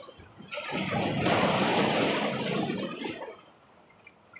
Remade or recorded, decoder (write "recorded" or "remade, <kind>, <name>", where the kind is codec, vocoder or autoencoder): recorded